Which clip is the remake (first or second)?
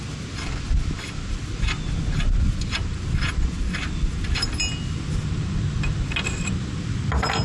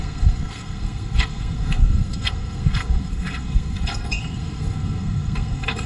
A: second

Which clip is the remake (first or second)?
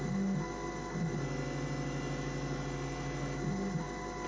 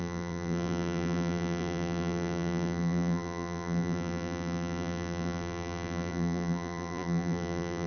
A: second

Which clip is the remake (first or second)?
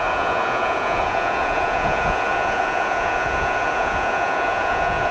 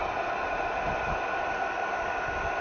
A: first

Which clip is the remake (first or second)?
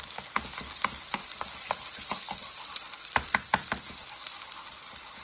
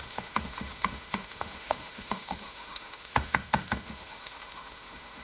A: second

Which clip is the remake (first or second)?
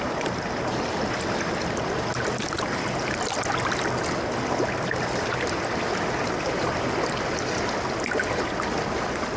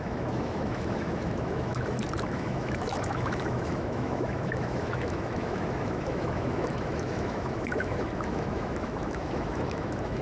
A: second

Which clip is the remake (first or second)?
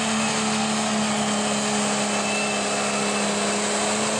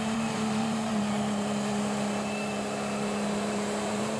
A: second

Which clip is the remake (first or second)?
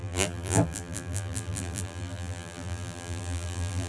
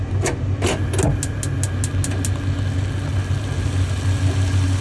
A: first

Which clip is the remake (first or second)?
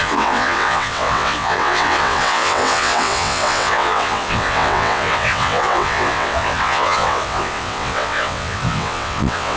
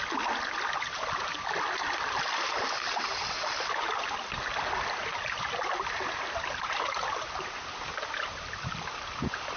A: first